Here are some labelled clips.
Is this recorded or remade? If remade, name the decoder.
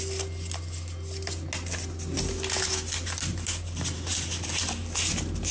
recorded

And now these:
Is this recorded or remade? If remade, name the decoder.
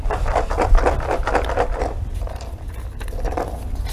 recorded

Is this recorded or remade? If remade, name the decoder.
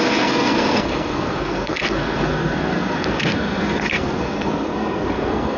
remade, codec, SNAC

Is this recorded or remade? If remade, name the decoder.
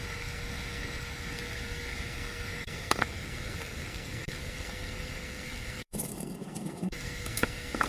remade, codec, SNAC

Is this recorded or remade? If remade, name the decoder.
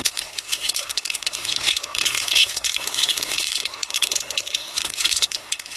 remade, codec, SNAC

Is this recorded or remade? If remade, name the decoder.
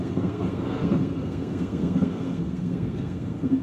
remade, codec, SNAC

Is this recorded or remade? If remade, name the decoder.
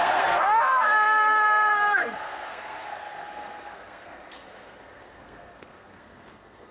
remade, codec, SNAC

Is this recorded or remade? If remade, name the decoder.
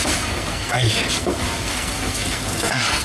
remade, codec, SNAC